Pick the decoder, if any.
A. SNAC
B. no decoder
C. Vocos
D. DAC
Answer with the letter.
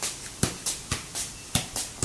B